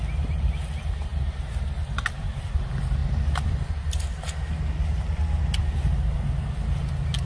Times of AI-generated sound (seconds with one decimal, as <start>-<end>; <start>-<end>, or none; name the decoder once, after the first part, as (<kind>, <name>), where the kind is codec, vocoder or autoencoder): none